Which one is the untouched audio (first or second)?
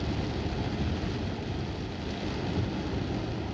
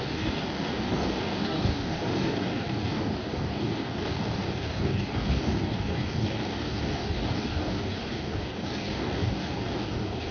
first